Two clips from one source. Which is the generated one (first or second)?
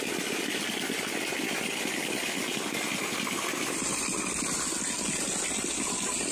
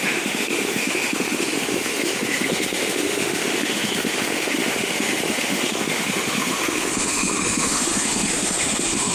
second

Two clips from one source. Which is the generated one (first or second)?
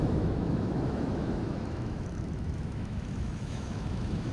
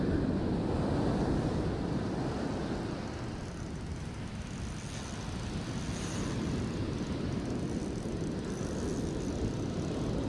first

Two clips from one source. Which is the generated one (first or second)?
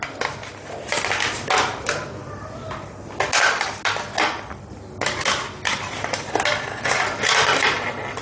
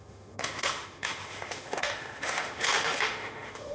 second